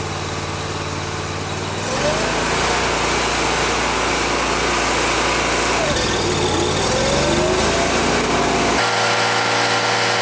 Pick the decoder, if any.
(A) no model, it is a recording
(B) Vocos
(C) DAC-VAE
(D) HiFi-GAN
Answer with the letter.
A